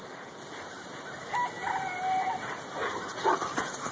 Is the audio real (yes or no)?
yes